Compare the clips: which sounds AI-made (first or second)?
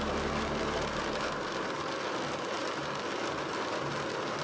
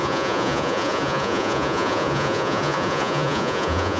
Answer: second